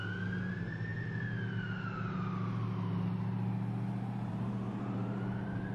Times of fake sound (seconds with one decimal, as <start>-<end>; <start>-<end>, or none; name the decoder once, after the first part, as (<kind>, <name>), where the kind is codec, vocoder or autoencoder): 0.5-0.9 (vocoder, BigVGAN v2); 4.3-5.7